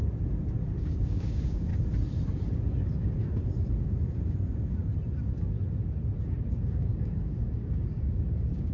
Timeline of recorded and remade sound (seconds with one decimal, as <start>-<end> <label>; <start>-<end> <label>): 0.0-0.8 recorded; 0.8-1.7 remade; 1.7-6.5 recorded; 6.5-8.7 remade